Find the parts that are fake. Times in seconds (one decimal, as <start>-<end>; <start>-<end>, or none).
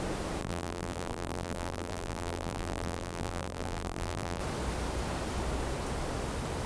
0.4-4.4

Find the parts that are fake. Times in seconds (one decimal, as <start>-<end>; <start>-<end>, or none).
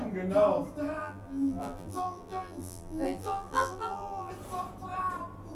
1.0-4.3